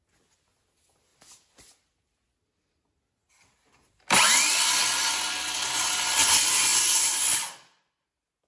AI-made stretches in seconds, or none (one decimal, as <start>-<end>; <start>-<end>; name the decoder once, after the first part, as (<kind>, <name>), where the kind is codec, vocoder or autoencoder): none